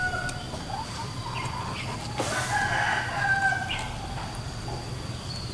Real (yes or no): yes